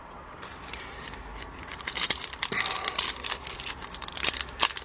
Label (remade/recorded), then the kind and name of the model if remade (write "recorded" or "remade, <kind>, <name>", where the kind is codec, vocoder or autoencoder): remade, vocoder, BigVGAN v2